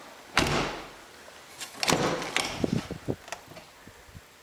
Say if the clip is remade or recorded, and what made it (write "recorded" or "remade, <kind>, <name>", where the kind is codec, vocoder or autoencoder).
recorded